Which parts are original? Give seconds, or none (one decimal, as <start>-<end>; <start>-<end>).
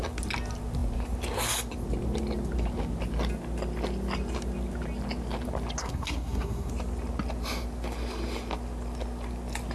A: 0.0-5.8; 6.7-9.7